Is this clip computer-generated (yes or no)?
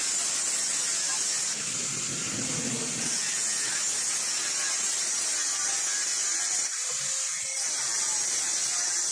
no